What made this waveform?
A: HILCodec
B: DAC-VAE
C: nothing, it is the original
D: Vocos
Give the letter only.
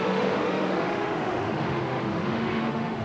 B